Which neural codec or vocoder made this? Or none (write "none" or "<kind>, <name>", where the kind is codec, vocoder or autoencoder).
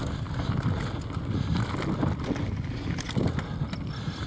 none